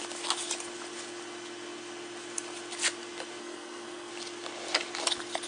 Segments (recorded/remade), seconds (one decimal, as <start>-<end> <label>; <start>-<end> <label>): 0.0-3.4 recorded; 3.4-4.1 remade; 4.1-5.5 recorded